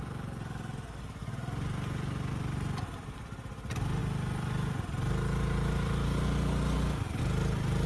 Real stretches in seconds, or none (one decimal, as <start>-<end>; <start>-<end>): 0.0-7.9